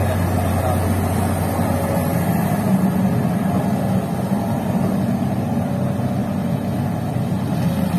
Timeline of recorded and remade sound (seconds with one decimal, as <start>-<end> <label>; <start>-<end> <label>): 0.0-8.0 recorded